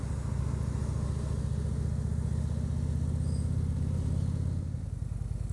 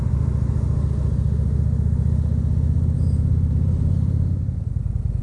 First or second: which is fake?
second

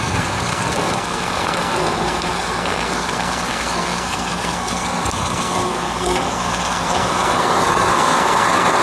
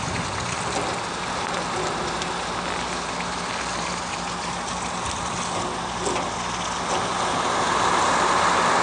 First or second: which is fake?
first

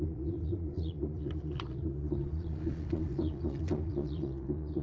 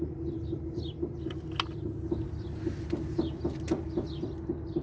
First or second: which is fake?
first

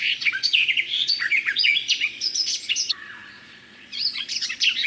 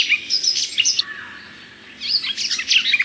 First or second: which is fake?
first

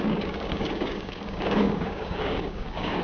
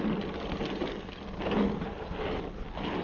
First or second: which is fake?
first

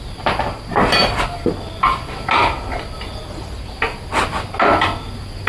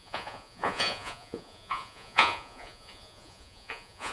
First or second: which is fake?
second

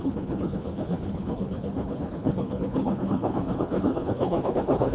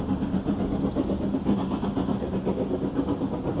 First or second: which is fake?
first